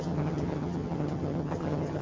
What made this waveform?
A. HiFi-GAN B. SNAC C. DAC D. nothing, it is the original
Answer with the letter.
A